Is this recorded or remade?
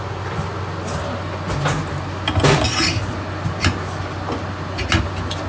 recorded